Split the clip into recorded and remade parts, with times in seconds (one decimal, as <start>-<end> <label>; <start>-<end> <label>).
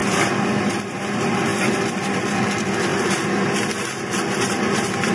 0.0-5.1 recorded